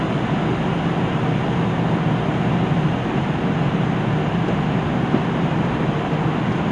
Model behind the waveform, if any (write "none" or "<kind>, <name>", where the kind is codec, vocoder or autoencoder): none